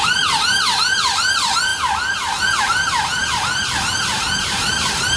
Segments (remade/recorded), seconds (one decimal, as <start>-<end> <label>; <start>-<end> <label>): 0.0-1.7 remade; 1.7-2.6 recorded; 2.6-5.2 remade